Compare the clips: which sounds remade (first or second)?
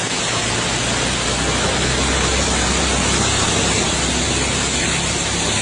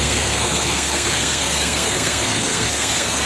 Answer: second